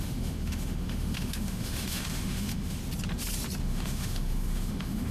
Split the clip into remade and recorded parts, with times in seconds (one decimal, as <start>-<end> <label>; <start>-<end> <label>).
0.0-2.8 remade; 2.8-3.6 recorded; 3.6-5.1 remade